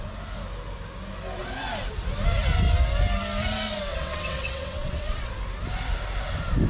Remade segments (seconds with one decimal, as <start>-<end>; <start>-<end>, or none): 3.9-5.3